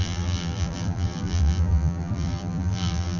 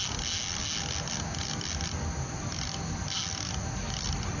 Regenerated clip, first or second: first